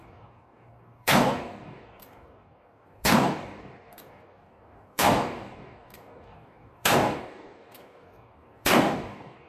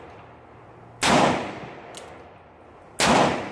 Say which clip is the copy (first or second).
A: first